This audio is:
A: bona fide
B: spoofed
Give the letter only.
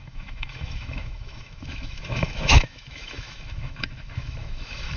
B